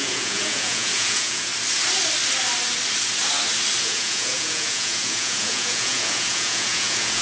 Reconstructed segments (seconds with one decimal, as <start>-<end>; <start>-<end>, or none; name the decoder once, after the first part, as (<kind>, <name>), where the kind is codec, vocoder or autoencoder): 0.0-1.5 (vocoder, Vocos); 3.8-7.2